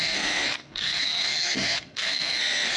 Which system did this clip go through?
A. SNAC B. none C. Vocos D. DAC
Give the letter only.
A